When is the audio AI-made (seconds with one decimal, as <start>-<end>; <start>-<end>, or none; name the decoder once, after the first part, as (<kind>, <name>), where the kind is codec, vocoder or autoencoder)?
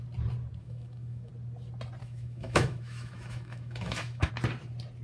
0.6-1.3 (autoencoder, DAC-VAE); 2.0-4.3